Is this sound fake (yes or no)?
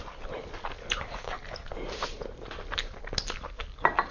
no